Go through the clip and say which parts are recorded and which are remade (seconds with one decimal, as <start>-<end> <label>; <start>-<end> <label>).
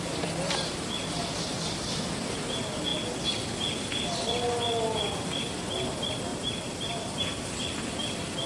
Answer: 0.0-6.3 recorded; 6.3-7.1 remade; 7.1-8.5 recorded